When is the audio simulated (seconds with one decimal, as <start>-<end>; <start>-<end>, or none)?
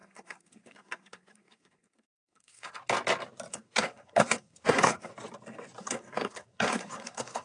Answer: 0.0-2.8; 3.5-5.1; 5.8-7.4